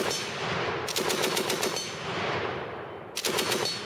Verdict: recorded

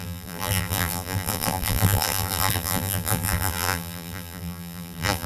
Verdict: remade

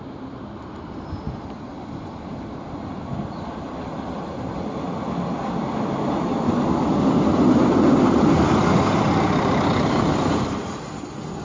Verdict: recorded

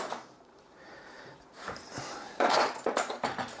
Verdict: remade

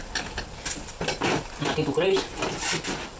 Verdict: recorded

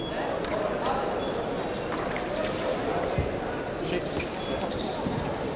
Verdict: recorded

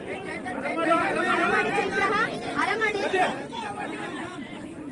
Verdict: remade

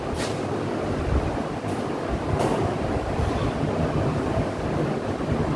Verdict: recorded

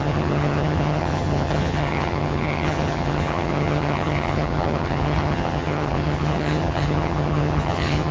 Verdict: remade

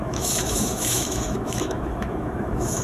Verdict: remade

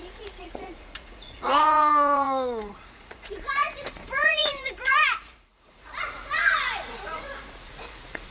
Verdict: remade